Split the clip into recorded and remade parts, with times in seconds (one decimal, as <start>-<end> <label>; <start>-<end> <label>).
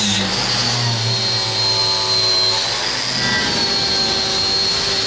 0.0-5.1 recorded